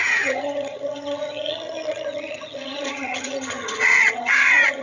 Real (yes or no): no